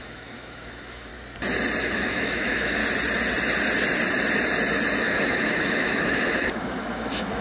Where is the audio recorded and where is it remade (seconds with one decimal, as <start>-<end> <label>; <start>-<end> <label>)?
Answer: 0.0-1.1 remade; 1.1-1.8 recorded; 1.8-2.8 remade; 2.8-5.0 recorded; 5.0-7.4 remade